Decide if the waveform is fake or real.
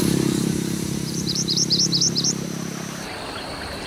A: fake